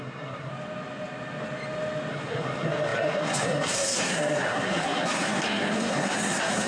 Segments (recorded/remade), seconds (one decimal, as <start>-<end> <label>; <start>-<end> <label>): 0.0-0.5 remade; 0.5-2.1 recorded; 2.1-6.7 remade